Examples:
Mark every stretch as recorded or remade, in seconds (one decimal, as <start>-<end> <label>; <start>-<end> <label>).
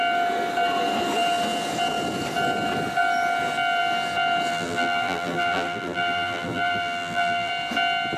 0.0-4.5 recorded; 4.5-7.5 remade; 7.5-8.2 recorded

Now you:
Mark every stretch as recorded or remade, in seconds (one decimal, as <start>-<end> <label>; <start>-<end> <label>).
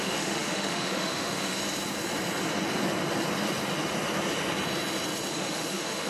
0.0-1.6 remade; 1.6-5.3 recorded; 5.3-6.1 remade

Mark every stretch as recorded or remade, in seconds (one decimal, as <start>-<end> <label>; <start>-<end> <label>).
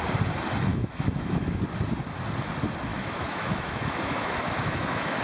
0.0-0.7 recorded; 0.7-1.6 remade; 1.6-2.9 recorded; 2.9-5.2 remade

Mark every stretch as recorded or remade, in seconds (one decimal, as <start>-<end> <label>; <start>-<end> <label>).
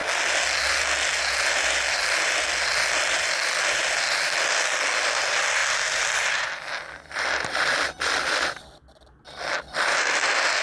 0.0-0.7 recorded; 0.7-10.6 remade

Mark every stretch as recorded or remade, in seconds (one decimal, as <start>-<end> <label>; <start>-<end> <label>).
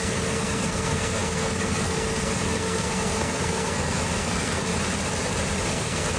0.0-4.7 remade; 4.7-5.6 recorded; 5.6-6.2 remade